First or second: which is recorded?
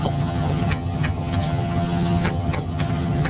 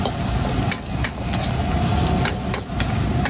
second